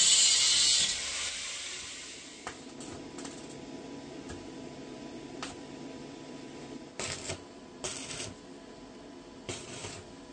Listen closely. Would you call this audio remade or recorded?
recorded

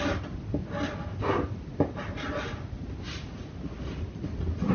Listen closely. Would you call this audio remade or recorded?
recorded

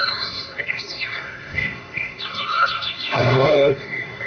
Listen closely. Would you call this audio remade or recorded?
remade